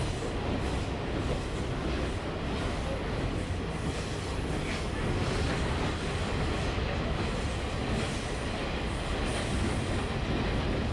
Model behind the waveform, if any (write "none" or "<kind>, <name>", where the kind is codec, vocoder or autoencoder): none